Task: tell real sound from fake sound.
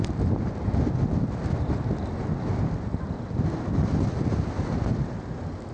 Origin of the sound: real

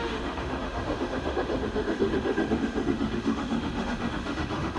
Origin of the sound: fake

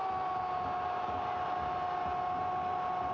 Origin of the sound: real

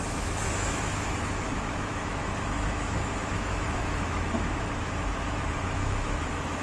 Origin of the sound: fake